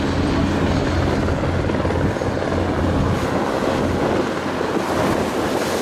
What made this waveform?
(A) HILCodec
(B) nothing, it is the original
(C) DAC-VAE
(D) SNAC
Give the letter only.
B